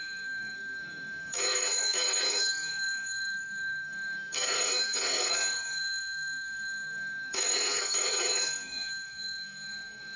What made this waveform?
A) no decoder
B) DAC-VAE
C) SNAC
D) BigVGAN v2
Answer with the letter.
C